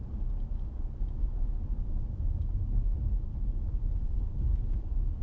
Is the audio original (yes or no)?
no